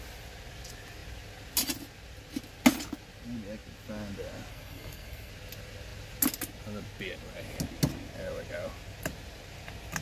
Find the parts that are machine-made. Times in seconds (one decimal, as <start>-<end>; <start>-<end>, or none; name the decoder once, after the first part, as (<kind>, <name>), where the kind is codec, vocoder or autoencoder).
4.5-5.3 (codec, SNAC)